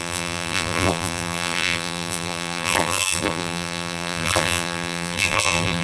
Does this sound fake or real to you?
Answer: fake